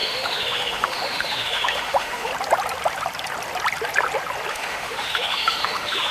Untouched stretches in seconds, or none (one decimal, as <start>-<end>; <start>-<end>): 2.3-4.5